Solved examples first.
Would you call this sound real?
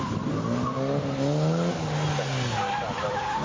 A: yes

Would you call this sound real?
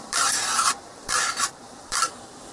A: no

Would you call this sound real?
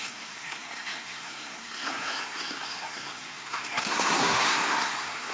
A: no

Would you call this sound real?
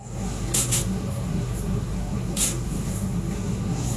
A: no